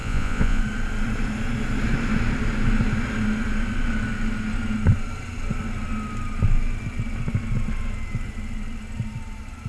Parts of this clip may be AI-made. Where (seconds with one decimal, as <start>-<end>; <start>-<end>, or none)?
0.0-0.6